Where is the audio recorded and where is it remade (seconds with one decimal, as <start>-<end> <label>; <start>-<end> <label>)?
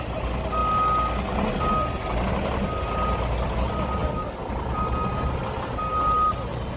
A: 0.0-6.8 recorded